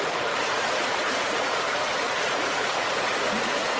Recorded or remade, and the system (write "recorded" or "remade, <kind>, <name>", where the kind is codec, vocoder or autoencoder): remade, vocoder, Vocos